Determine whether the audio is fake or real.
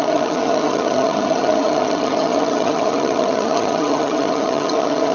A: fake